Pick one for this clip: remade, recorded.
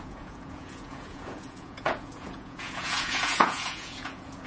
remade